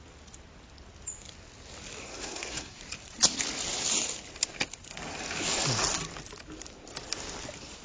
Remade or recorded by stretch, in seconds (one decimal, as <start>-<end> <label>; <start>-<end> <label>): 0.0-2.0 recorded; 2.0-2.8 remade; 2.8-7.8 recorded